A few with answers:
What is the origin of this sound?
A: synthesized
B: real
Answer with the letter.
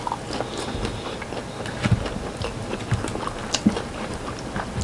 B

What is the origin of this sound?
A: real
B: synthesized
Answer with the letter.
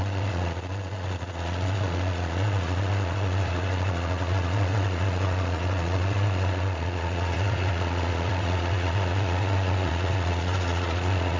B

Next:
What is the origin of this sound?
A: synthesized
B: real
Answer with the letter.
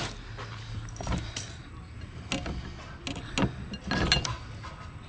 B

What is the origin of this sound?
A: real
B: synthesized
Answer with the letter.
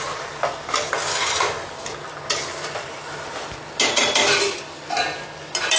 A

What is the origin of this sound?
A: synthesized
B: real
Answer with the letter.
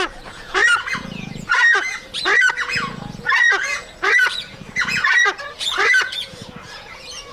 A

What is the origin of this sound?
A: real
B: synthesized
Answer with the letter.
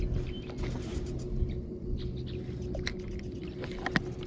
A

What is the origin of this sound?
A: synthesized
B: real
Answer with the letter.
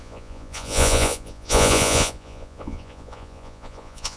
A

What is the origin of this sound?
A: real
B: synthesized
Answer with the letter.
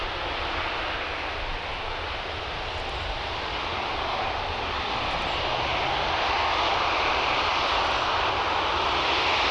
A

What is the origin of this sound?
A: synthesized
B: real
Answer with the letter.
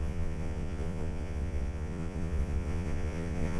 A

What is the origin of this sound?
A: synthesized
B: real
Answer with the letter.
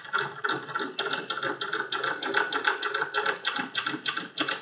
B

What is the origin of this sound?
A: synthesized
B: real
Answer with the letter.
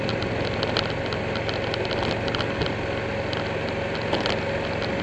B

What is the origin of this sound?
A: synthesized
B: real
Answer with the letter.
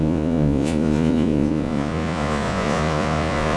A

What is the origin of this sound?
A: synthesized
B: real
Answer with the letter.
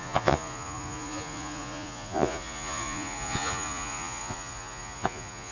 A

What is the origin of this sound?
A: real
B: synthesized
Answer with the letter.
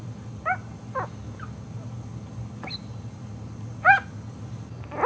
A